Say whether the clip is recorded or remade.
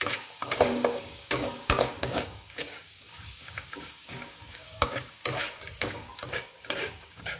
remade